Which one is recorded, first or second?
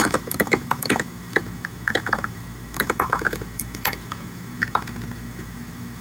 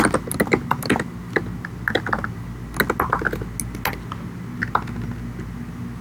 second